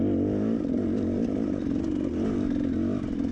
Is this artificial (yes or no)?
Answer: no